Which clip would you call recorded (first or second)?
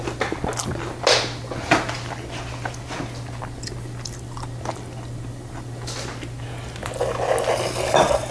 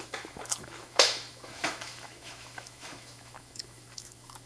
first